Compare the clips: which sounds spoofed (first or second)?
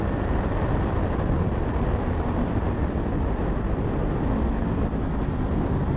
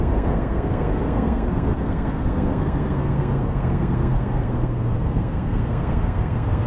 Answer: second